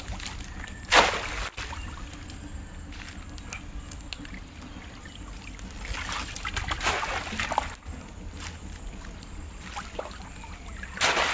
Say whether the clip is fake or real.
real